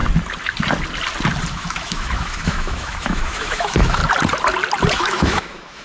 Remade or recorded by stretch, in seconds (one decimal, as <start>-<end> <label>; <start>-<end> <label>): 0.0-1.5 recorded; 1.5-4.0 remade; 4.0-4.9 recorded; 4.9-5.8 remade